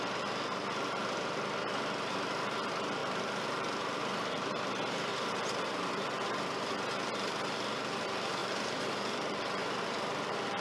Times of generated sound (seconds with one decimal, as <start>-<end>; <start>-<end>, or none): 3.0-4.5; 5.1-5.9; 8.4-10.6